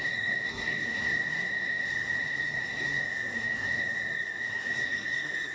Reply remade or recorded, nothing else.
remade